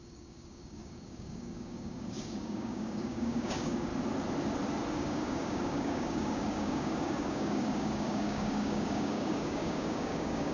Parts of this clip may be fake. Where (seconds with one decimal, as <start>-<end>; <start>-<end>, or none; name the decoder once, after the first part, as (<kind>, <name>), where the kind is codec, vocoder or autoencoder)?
0.0-3.9 (codec, DAC); 4.9-10.5